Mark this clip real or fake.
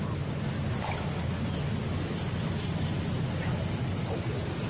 real